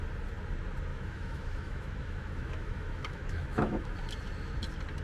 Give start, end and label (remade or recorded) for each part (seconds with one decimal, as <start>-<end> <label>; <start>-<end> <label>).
0.0-0.9 recorded; 0.9-3.9 remade; 3.9-5.0 recorded